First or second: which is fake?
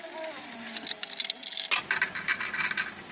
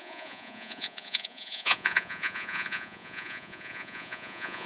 second